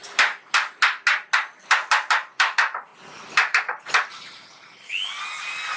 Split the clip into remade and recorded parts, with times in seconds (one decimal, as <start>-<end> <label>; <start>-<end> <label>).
0.0-2.3 recorded; 2.3-2.9 remade; 2.9-5.8 recorded